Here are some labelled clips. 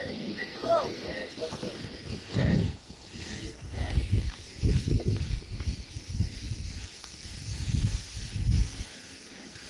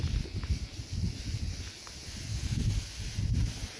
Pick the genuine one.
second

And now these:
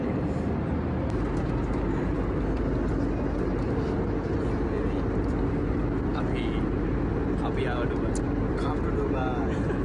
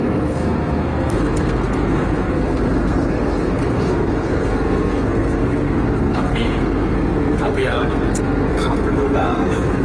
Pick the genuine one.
first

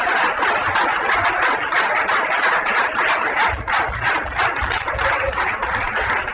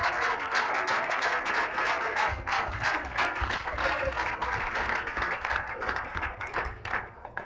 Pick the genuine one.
first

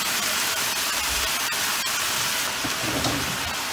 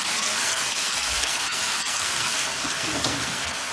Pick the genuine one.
first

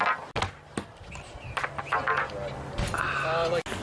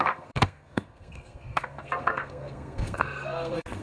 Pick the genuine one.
first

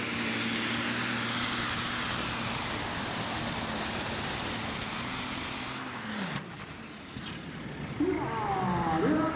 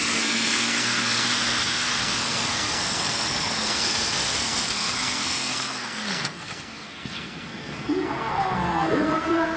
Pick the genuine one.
first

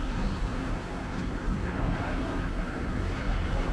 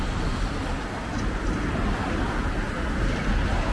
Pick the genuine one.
second